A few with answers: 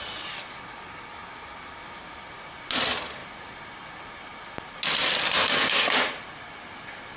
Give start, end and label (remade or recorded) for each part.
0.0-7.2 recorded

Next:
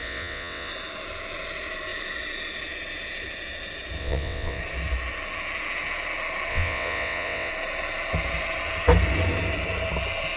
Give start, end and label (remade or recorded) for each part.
0.0-0.7 remade; 0.7-4.0 recorded; 4.0-4.6 remade; 4.6-6.5 recorded; 6.5-7.5 remade; 7.5-10.4 recorded